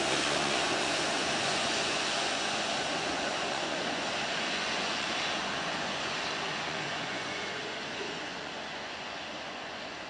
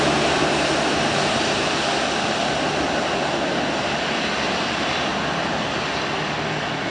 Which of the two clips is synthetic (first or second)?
first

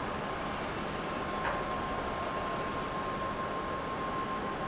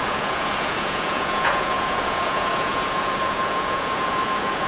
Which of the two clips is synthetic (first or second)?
second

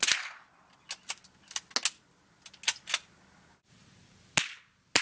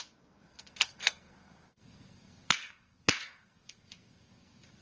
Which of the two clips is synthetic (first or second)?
second